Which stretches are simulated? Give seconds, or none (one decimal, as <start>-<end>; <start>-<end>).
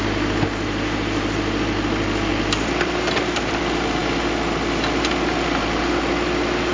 2.3-3.6